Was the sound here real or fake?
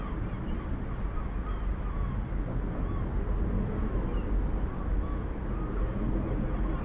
real